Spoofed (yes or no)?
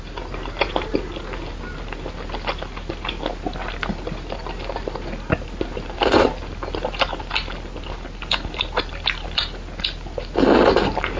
no